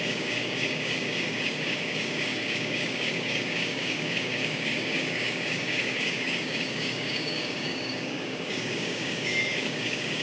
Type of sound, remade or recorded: remade